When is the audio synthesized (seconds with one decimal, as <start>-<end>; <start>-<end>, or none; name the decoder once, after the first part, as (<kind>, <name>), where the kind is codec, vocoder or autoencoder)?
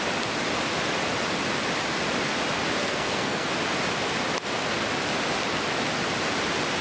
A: 2.8-3.5 (codec, SNAC)